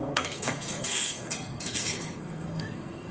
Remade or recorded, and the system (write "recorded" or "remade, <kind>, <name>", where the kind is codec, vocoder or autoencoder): remade, codec, SNAC